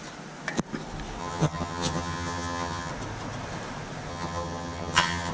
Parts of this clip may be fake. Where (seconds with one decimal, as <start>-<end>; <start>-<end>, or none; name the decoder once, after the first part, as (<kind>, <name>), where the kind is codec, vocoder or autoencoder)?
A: 1.2-2.9 (vocoder, HiFi-GAN); 4.1-5.3